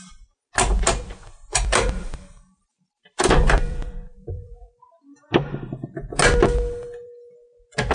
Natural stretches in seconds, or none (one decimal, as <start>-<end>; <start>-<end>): 0.0-1.5; 4.8-7.9

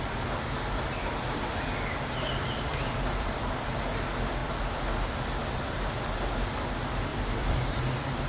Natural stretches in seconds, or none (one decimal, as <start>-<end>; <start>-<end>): 0.0-2.7; 3.8-4.4; 6.1-7.1; 7.9-8.3

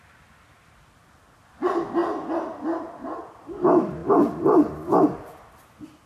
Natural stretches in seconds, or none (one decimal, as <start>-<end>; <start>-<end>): 0.0-6.1